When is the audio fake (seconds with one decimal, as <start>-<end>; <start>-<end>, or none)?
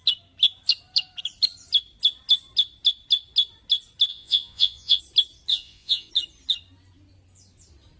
4.1-5.0; 5.5-6.1